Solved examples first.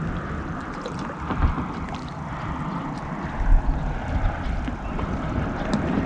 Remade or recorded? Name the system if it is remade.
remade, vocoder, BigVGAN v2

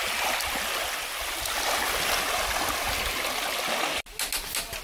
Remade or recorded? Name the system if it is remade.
recorded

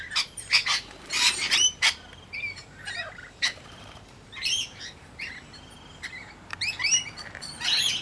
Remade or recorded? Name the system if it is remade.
remade, vocoder, BigVGAN v2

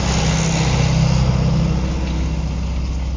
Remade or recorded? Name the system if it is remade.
recorded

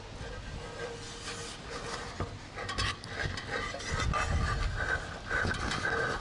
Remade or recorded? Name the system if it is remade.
recorded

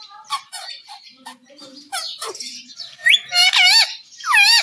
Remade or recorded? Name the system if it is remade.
remade, vocoder, BigVGAN v2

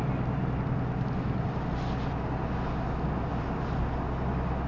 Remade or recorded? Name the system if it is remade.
recorded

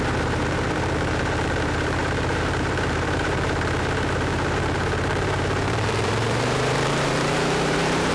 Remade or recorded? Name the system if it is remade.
remade, vocoder, BigVGAN v2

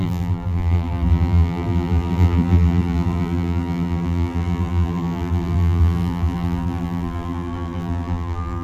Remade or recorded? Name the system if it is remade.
remade, vocoder, BigVGAN v2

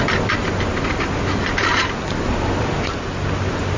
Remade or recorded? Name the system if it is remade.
remade, vocoder, BigVGAN v2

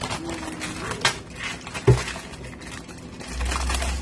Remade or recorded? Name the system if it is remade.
recorded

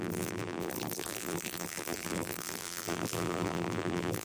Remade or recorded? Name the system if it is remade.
remade, vocoder, BigVGAN v2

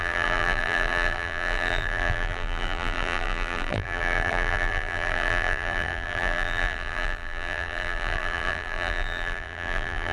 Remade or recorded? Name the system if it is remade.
remade, vocoder, BigVGAN v2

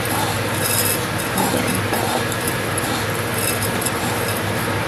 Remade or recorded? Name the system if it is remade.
recorded